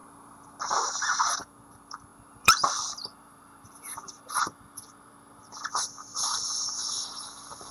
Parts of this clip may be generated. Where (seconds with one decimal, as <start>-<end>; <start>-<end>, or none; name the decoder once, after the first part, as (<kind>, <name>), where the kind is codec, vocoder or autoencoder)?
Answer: 2.1-4.4 (vocoder, BigVGAN v2)